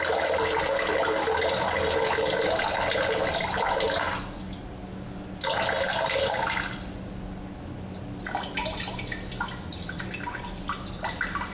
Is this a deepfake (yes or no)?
no